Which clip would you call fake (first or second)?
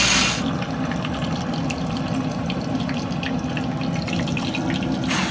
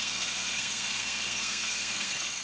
second